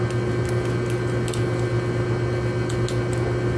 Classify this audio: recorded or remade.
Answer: recorded